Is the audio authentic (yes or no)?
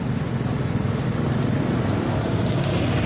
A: yes